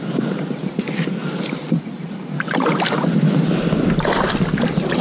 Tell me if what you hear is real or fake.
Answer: real